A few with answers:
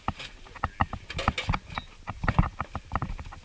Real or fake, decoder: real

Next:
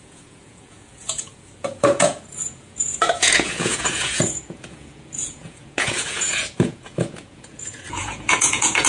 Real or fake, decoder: fake, vocoder, Vocos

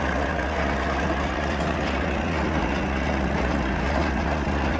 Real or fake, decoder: fake, vocoder, Vocos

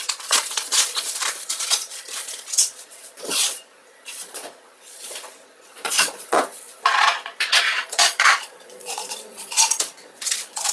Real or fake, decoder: fake, vocoder, Vocos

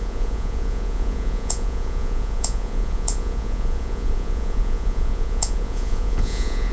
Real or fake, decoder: fake, vocoder, Vocos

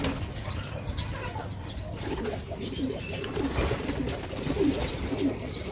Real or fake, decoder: real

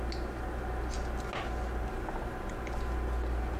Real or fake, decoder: real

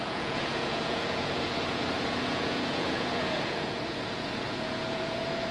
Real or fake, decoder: fake, vocoder, Vocos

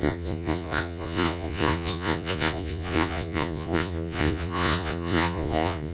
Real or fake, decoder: fake, vocoder, Vocos